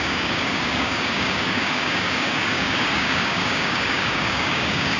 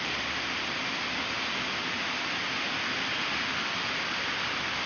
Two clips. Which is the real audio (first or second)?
second